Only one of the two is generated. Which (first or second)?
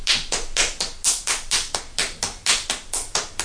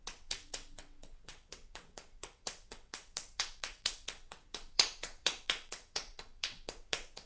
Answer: second